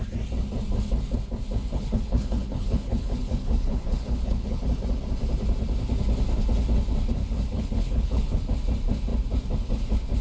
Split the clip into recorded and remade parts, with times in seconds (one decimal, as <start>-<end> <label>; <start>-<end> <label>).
0.0-1.7 recorded; 1.7-4.6 remade; 4.6-7.2 recorded; 7.2-8.4 remade; 8.4-10.2 recorded